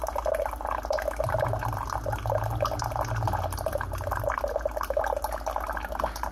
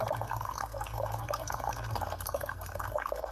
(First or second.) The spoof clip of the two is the second